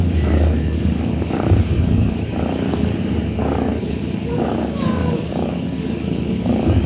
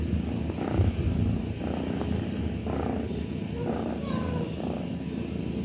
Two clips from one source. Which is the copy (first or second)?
first